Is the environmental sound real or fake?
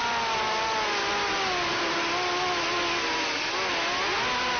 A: real